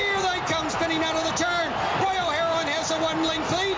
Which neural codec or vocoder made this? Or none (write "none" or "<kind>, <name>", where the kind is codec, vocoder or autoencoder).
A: none